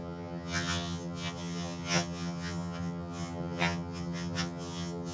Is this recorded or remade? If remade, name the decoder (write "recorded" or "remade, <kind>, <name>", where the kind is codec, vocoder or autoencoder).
remade, vocoder, HiFi-GAN